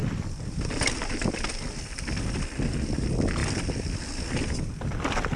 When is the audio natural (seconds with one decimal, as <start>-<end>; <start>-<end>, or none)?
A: 0.0-5.4